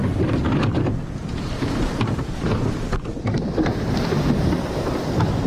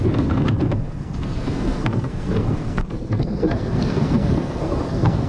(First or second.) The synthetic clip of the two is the second